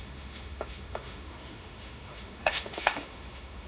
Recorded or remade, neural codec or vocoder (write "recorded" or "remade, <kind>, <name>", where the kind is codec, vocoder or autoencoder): remade, autoencoder, DAC-VAE